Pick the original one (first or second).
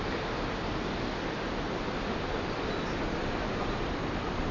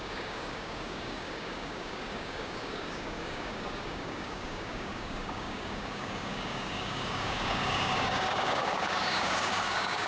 first